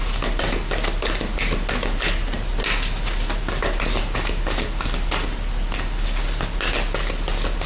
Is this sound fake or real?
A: real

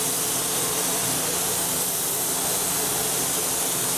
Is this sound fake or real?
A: real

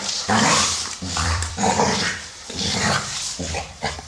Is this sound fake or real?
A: fake